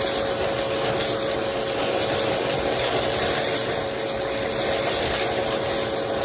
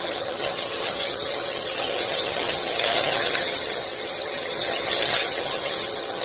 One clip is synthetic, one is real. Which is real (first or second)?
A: first